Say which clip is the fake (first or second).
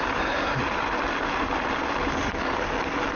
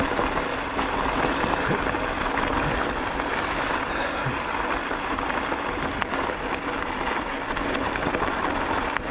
second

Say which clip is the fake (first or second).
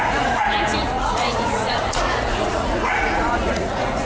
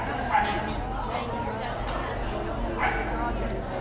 first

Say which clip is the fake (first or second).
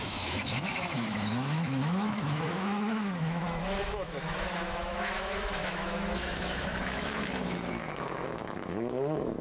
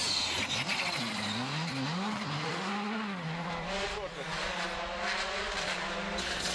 first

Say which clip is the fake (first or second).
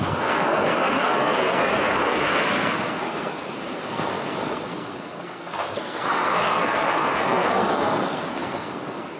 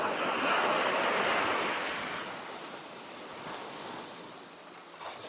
first